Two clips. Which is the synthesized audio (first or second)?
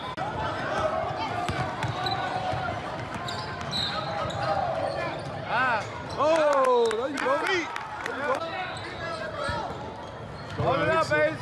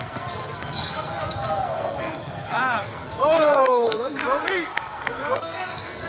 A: second